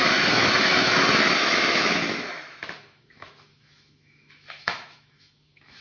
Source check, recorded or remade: remade